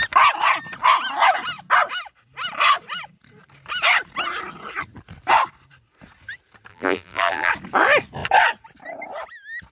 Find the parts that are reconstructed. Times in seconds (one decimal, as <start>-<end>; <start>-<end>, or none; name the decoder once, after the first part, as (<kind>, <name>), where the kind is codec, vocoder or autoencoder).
6.7-7.5 (vocoder, BigVGAN v2)